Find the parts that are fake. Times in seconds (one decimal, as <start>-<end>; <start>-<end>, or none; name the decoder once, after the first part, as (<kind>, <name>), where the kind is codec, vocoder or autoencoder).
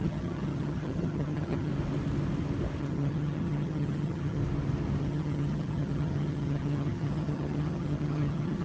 0.0-1.7 (vocoder, HiFi-GAN); 2.8-4.4; 5.0-8.6